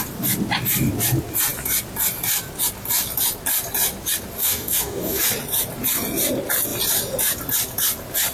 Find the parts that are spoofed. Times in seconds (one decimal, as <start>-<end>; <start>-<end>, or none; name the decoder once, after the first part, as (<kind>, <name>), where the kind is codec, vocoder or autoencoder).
4.4-5.2 (codec, DAC)